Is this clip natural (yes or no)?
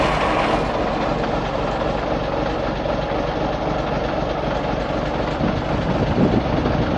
yes